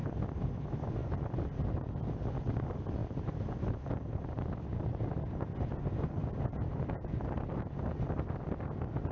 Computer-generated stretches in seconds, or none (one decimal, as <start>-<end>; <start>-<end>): 3.0-4.5; 6.2-7.8